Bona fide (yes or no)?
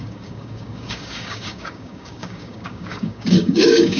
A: no